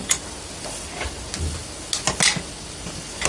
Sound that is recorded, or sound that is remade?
recorded